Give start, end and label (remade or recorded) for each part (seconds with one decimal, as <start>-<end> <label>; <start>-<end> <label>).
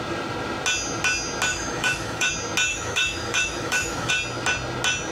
0.0-1.5 recorded; 1.5-2.3 remade; 2.3-2.7 recorded; 2.7-4.1 remade; 4.1-5.1 recorded